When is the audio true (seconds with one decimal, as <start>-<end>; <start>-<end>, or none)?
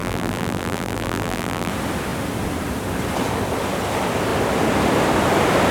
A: 1.7-5.7